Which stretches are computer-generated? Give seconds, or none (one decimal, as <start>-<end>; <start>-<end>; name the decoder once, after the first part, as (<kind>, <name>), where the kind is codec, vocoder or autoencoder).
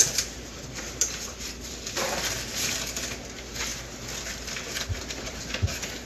0.0-1.7 (vocoder, BigVGAN v2)